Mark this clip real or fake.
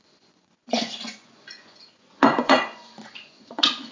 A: fake